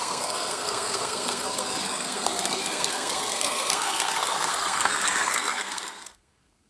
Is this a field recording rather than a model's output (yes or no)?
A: no